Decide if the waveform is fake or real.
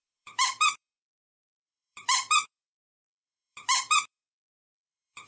fake